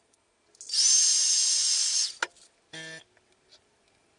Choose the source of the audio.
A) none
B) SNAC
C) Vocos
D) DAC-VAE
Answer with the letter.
A